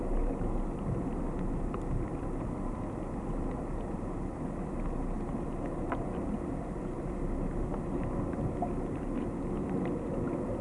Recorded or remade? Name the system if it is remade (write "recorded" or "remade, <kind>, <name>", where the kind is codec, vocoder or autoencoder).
recorded